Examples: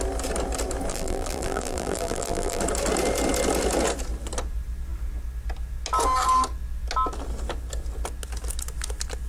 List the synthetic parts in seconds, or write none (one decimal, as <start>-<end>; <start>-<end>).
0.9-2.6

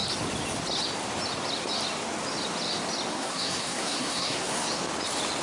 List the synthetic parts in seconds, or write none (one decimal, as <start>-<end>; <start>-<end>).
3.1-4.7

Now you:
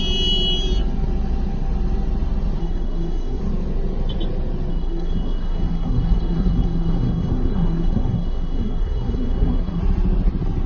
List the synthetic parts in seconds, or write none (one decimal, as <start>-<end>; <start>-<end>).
2.6-3.4; 4.7-9.8

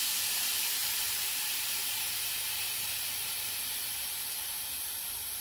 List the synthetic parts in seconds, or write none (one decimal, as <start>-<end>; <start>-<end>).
0.0-5.4

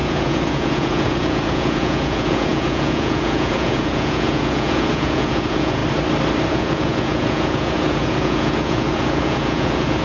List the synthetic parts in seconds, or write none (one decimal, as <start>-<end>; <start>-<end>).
0.0-5.8; 6.5-10.0

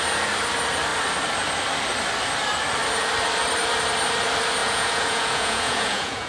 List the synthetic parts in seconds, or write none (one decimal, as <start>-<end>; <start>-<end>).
4.6-6.3

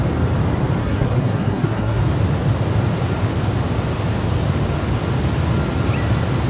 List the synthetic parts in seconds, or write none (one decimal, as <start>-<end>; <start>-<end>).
0.8-2.0